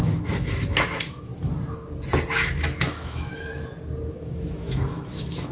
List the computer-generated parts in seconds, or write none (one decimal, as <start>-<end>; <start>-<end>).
0.0-1.3; 2.8-3.5; 4.1-5.5